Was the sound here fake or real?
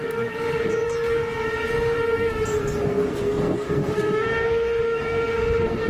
fake